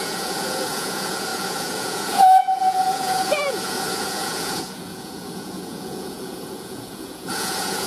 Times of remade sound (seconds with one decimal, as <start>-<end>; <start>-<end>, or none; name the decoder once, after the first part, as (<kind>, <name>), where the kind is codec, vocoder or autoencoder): 0.0-7.9 (vocoder, Vocos)